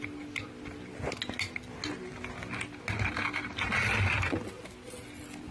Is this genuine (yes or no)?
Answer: yes